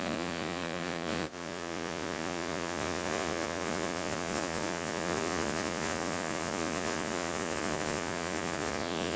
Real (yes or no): no